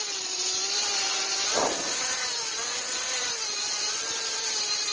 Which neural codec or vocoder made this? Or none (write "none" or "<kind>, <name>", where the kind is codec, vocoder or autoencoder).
vocoder, BigVGAN v2